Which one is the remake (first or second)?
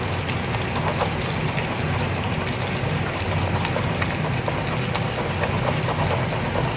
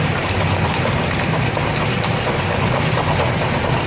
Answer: second